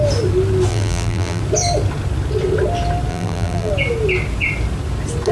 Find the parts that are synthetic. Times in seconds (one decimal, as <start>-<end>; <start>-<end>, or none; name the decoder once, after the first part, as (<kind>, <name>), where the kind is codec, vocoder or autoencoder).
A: 0.7-1.4 (vocoder, BigVGAN v2); 3.1-3.7

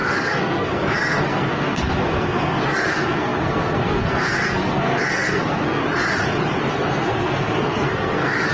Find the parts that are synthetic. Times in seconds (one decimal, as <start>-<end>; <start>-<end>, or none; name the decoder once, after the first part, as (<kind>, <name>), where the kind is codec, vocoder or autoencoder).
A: 0.0-5.8 (codec, SNAC); 6.7-8.5

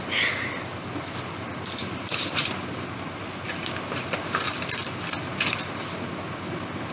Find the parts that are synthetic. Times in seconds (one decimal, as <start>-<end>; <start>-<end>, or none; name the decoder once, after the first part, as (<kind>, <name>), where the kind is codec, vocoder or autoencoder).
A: 1.8-3.2 (vocoder, BigVGAN v2)

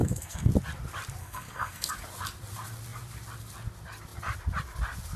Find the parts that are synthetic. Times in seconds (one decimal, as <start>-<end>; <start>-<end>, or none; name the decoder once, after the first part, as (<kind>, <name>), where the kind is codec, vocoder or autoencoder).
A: 0.0-0.5 (codec, SNAC); 1.2-1.9